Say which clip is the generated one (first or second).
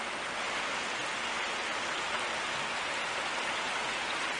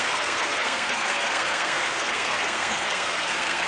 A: second